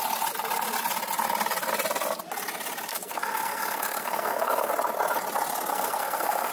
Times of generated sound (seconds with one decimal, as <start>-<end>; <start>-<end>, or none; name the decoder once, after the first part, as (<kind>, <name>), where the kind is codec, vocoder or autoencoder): 2.9-4.7 (codec, SNAC); 5.7-6.5